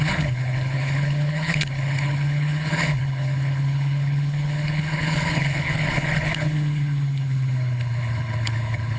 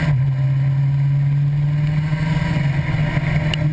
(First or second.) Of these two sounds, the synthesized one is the first